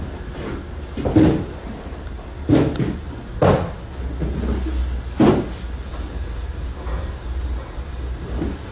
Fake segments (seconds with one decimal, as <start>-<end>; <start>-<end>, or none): none